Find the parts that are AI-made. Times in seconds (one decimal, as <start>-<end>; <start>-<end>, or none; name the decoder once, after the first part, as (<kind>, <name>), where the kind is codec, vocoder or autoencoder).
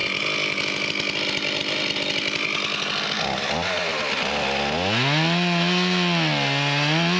none